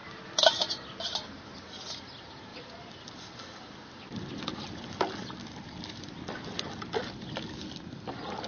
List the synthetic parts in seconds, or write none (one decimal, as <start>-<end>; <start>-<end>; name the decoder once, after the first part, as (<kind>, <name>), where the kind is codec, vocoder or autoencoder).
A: none